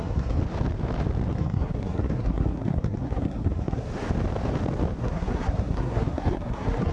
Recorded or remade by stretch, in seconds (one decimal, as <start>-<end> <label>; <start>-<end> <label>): 0.0-0.4 remade; 0.4-1.3 recorded; 1.3-3.9 remade; 3.9-5.0 recorded; 5.0-6.9 remade